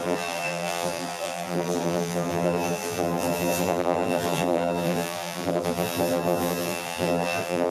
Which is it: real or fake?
fake